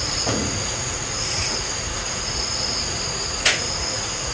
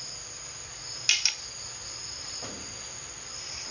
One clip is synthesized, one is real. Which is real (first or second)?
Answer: second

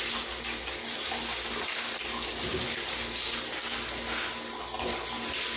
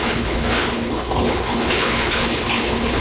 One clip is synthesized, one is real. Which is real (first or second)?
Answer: first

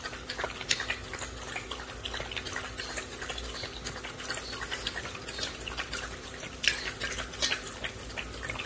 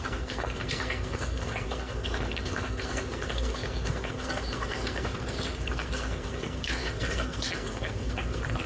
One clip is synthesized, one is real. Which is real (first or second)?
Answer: first